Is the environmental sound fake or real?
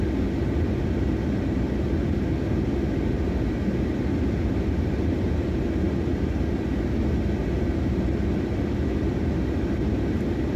real